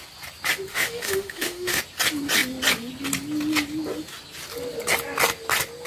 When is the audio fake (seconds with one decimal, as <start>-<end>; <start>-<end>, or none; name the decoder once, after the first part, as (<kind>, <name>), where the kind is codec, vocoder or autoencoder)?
0.7-1.8 (autoencoder, DAC-VAE)